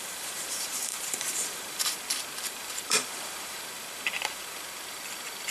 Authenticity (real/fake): fake